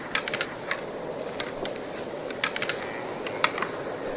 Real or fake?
real